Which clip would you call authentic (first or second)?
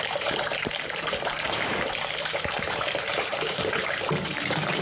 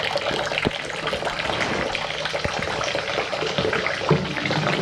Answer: second